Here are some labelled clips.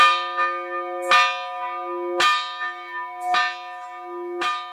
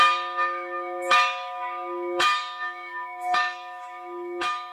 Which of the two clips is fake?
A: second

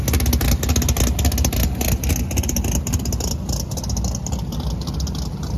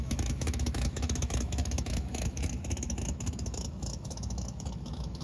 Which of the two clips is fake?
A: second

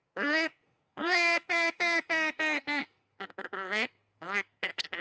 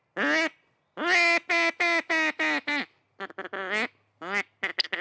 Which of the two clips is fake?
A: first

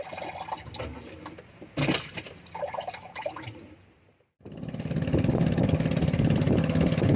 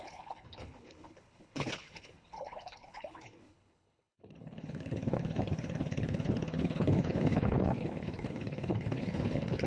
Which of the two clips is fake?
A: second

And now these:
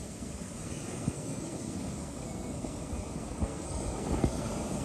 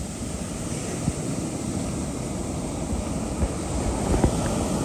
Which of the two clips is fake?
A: first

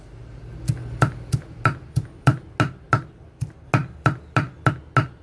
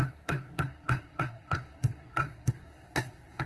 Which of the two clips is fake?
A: second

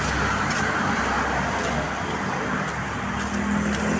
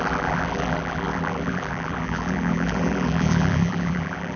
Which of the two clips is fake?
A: second